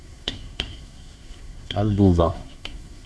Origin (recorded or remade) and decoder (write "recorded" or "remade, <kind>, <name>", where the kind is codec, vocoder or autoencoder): remade, codec, SNAC